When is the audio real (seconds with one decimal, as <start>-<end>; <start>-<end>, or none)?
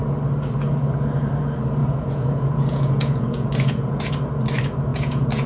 0.0-1.8; 4.1-4.9